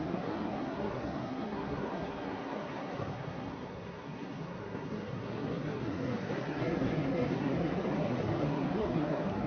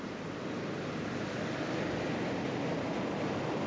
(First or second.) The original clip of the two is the second